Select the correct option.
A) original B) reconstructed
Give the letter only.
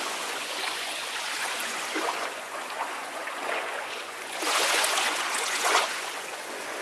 B